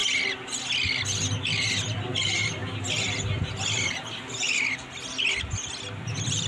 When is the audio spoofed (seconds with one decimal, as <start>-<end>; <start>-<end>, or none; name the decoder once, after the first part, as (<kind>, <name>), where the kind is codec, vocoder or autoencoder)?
none